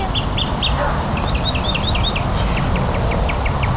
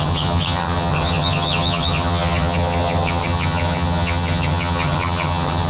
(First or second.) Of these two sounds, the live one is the first